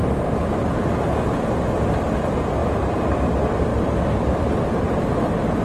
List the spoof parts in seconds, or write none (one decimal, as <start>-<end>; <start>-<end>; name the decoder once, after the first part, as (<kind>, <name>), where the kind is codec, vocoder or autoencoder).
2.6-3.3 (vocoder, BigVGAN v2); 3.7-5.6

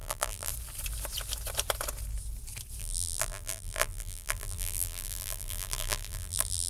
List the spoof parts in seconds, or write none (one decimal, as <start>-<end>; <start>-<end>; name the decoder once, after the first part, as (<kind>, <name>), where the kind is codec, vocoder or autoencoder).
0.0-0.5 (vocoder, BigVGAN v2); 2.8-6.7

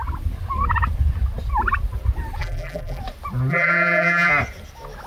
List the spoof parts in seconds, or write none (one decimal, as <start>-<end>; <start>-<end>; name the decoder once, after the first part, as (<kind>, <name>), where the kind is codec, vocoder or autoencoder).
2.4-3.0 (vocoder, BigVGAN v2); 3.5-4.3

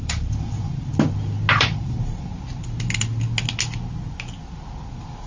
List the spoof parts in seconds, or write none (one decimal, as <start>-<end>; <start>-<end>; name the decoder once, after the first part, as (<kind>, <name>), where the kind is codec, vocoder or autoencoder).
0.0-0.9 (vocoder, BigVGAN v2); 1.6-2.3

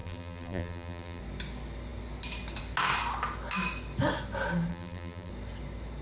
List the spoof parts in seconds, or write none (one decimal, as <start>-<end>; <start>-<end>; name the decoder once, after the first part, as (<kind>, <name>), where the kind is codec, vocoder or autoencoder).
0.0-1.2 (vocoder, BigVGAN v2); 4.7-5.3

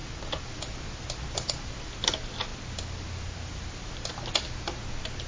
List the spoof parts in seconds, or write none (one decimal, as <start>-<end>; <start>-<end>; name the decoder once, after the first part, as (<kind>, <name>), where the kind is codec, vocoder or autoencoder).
none